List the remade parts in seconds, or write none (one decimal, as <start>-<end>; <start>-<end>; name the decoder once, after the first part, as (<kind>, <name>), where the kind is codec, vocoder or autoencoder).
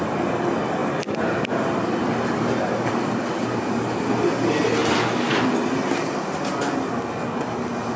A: none